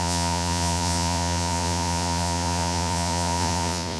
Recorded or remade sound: remade